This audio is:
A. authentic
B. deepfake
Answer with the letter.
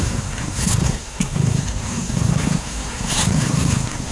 B